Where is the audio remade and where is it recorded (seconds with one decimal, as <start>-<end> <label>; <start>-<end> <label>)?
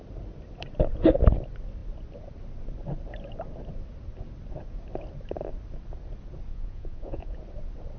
0.0-6.5 recorded; 6.5-7.4 remade; 7.4-8.0 recorded